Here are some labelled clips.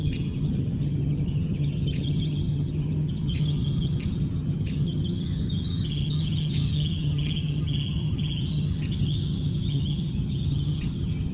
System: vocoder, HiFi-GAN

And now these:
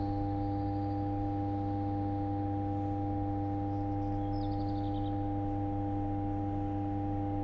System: none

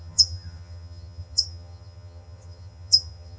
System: vocoder, HiFi-GAN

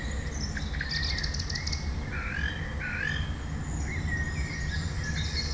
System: none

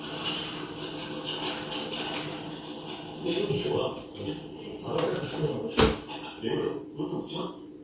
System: none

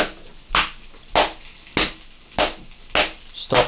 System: none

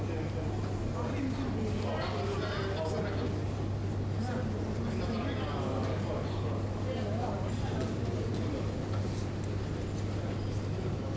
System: none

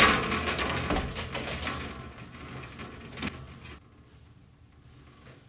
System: none